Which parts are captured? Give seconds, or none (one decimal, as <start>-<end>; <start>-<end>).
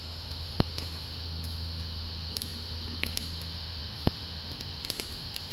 none